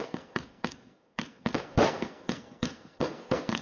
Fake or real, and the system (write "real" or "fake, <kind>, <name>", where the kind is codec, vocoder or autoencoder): fake, codec, SNAC